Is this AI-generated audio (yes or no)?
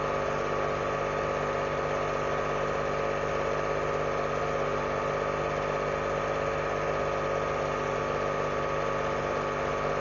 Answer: no